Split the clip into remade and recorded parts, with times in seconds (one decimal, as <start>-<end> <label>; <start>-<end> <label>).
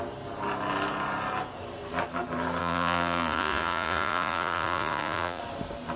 0.0-2.6 recorded; 2.6-5.4 remade; 5.4-6.0 recorded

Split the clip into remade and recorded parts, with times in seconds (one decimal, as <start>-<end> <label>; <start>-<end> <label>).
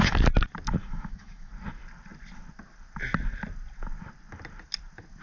0.0-0.8 recorded; 0.8-1.5 remade; 1.5-5.2 recorded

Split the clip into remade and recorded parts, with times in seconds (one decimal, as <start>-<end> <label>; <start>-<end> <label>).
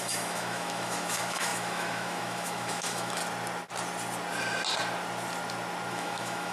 0.0-3.2 remade; 3.2-5.9 recorded; 5.9-6.5 remade